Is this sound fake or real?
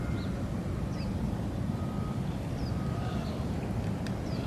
real